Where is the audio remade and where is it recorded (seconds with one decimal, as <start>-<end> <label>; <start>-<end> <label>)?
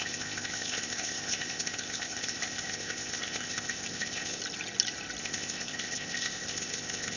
0.0-4.4 remade; 4.4-5.2 recorded; 5.2-7.2 remade